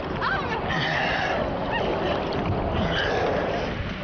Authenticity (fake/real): real